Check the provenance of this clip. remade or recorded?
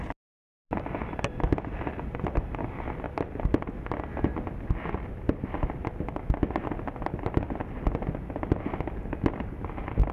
recorded